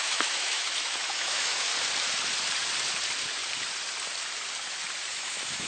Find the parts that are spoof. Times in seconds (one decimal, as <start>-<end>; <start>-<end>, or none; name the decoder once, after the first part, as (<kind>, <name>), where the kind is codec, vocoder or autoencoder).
0.0-1.7 (autoencoder, DAC-VAE); 5.1-5.7